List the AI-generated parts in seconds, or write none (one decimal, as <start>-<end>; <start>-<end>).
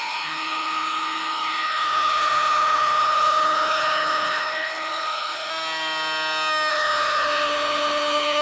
0.0-5.5; 6.7-8.4